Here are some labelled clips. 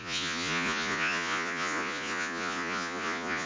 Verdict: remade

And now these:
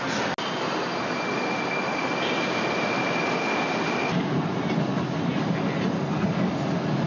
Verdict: recorded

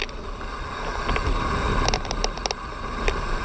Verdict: recorded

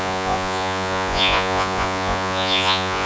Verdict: remade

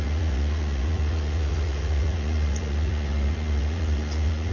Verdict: remade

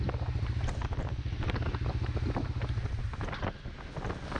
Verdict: recorded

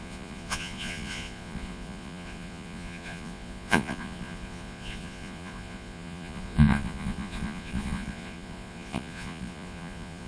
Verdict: remade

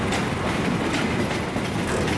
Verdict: recorded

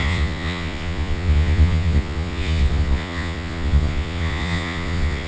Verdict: remade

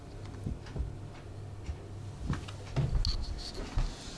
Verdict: recorded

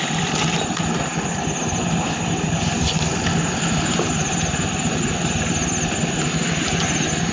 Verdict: recorded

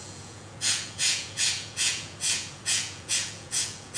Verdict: remade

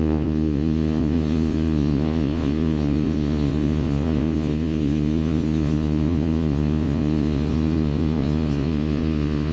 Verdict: remade